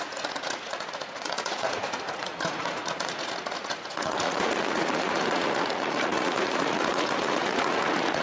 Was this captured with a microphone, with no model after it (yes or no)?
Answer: no